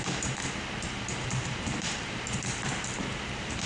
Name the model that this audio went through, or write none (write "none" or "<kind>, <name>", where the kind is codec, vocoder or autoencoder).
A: vocoder, BigVGAN v2